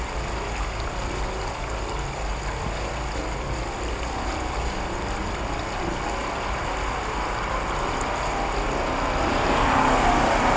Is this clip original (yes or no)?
yes